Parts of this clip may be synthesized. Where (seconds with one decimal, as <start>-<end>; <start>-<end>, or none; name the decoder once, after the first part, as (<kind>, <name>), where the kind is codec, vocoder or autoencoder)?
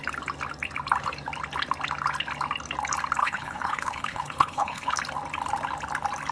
3.2-5.0 (codec, HILCodec)